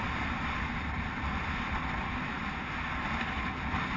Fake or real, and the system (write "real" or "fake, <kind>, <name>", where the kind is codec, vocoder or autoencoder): real